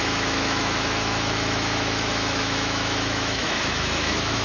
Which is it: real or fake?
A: fake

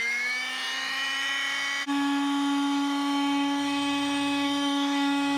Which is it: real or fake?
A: fake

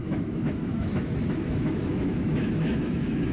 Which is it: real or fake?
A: fake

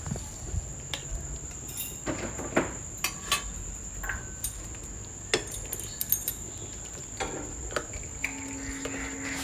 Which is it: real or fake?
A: real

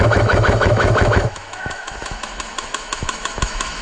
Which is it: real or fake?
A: fake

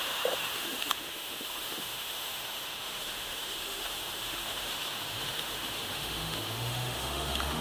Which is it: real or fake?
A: fake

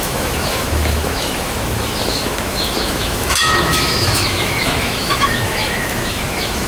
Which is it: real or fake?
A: fake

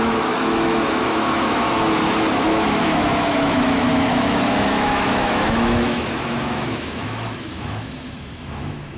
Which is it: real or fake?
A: fake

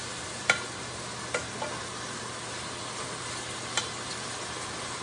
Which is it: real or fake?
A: real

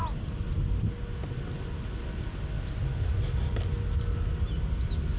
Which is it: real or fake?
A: real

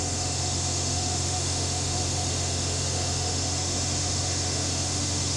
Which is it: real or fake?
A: fake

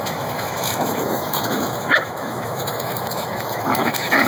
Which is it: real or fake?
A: fake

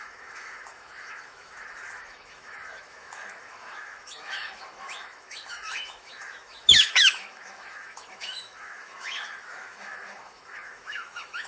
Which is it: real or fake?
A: fake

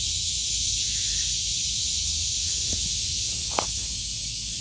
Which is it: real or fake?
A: fake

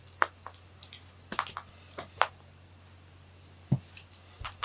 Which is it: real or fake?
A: real